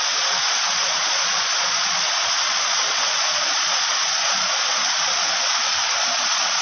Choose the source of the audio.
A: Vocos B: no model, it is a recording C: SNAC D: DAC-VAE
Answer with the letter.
A